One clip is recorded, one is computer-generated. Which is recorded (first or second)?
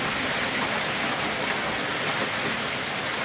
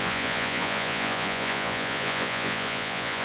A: first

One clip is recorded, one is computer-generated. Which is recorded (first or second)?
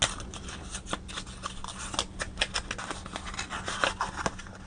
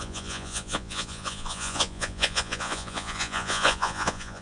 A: first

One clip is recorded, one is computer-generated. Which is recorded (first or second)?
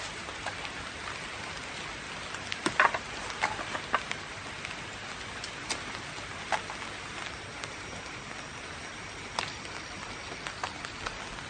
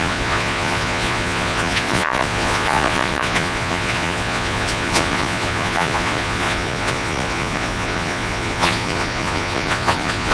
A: first